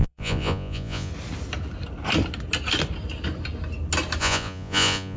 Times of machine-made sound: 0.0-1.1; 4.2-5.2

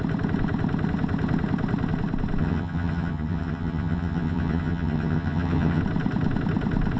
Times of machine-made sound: 2.4-5.8

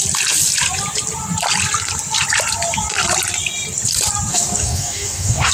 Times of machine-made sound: 4.3-5.5

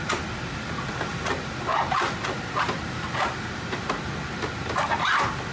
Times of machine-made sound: none